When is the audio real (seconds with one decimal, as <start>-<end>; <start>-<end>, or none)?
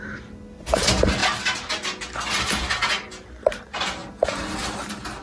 0.0-5.2